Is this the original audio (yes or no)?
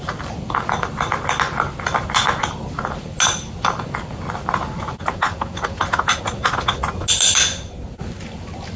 yes